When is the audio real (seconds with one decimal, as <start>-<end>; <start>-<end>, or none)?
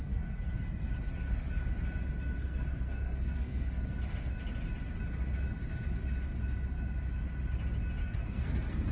0.9-2.4; 4.0-8.0